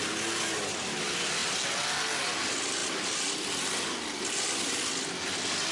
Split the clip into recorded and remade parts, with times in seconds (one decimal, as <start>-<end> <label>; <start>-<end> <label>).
0.0-5.7 recorded